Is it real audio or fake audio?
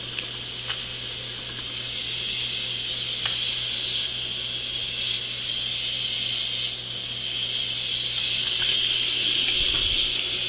real